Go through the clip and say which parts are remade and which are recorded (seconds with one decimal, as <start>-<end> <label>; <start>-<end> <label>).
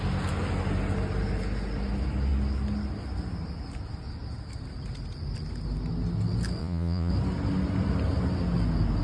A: 0.0-6.6 recorded; 6.6-7.1 remade; 7.1-9.0 recorded